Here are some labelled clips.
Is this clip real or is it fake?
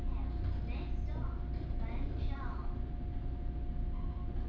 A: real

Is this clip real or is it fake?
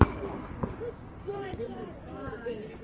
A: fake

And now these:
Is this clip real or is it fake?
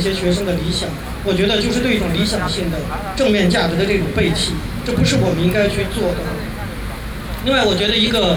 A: real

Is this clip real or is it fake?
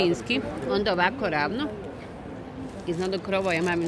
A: real